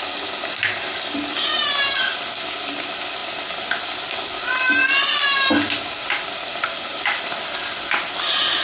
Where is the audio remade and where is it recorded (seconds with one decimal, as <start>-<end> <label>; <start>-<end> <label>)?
0.0-8.6 recorded

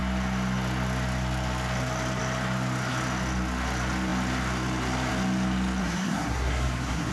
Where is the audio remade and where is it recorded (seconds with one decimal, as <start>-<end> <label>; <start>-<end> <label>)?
0.0-5.8 recorded; 5.8-7.1 remade

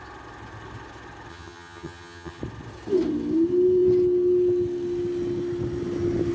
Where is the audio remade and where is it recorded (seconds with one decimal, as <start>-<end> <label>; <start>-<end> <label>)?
0.0-1.3 recorded; 1.3-2.4 remade; 2.4-6.3 recorded

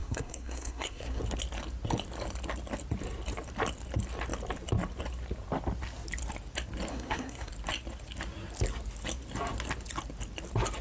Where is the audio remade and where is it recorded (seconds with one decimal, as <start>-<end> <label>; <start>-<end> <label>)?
0.0-1.2 remade; 1.2-6.9 recorded; 6.9-7.5 remade; 7.5-10.8 recorded

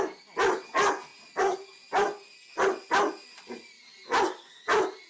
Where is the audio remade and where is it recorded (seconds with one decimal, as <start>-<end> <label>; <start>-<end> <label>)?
0.0-5.1 recorded

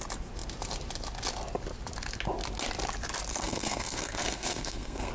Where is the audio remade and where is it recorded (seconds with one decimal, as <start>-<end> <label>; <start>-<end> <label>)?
0.0-3.3 recorded; 3.3-5.1 remade

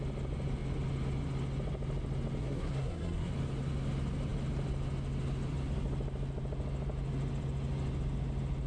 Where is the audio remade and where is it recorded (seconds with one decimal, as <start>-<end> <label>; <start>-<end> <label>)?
0.0-2.4 recorded; 2.4-3.3 remade; 3.3-8.7 recorded